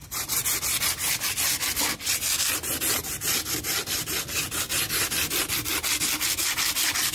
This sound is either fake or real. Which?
real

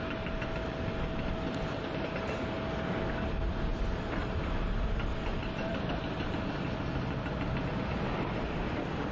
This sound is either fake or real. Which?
real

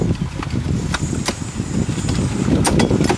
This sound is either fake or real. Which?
real